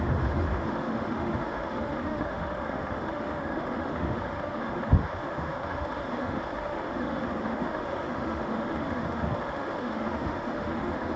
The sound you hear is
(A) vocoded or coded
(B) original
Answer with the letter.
A